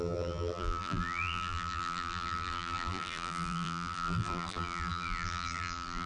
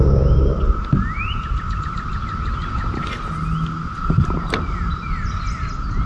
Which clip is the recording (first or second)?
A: second